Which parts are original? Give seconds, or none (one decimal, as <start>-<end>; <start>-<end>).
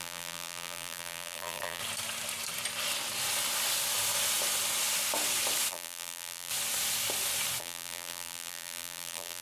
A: 1.8-5.7; 6.5-7.6